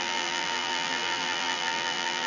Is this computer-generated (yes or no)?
yes